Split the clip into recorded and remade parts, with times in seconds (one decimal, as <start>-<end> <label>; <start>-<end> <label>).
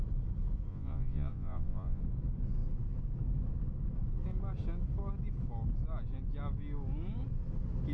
0.0-0.7 recorded; 0.7-2.0 remade; 2.0-7.9 recorded